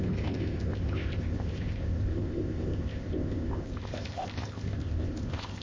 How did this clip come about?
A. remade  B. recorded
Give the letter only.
A